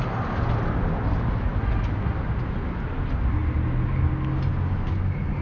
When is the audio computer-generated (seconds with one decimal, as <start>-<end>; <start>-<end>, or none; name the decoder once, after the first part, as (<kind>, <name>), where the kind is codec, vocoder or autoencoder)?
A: none